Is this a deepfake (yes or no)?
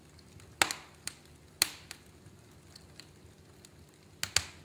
no